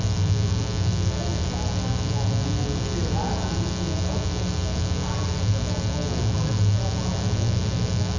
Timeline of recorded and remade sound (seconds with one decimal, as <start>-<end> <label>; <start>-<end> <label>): 0.0-8.2 recorded